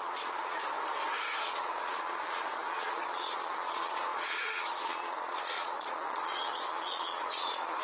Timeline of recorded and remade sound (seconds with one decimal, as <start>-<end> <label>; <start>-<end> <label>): 0.0-0.6 remade; 0.6-1.4 recorded; 1.4-7.8 remade